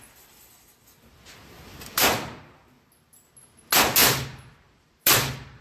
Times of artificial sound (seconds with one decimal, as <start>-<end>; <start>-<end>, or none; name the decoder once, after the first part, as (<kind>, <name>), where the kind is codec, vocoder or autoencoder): 1.7-2.4 (vocoder, BigVGAN v2); 4.0-5.1